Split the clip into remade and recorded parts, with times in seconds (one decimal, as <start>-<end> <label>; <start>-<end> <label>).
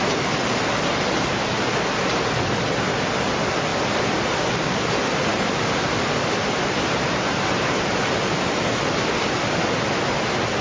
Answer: 0.0-5.3 recorded; 5.3-6.0 remade; 6.0-6.4 recorded; 6.4-8.6 remade; 8.6-10.6 recorded